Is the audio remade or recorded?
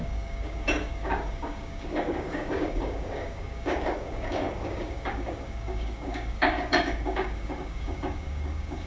remade